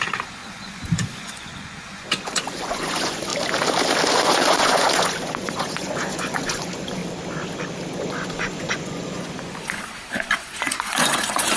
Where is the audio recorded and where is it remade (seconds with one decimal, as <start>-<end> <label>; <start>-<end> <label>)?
0.0-3.3 remade; 3.3-4.1 recorded; 4.1-7.0 remade; 7.0-7.9 recorded; 7.9-11.6 remade